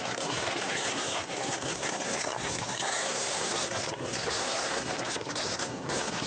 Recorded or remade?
remade